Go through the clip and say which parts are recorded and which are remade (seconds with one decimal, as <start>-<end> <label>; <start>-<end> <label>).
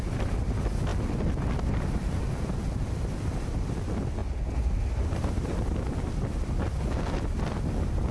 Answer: 0.0-8.1 recorded